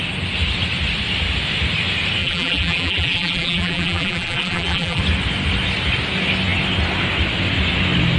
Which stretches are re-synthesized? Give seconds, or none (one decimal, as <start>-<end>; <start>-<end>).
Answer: 2.2-5.0